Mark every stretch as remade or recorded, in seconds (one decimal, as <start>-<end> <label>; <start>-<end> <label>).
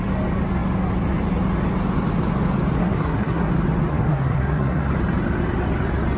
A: 0.0-2.8 recorded; 2.8-3.5 remade; 3.5-3.9 recorded; 3.9-4.9 remade; 4.9-6.2 recorded